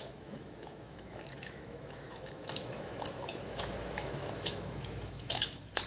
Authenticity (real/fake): fake